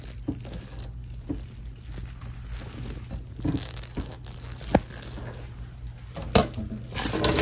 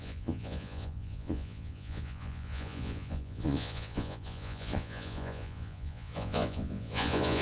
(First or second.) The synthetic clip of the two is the second